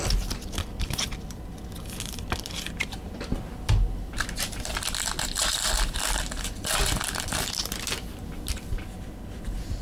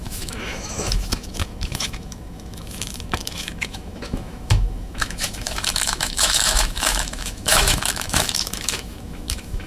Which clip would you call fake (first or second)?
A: second